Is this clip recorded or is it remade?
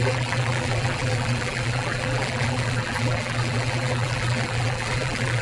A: remade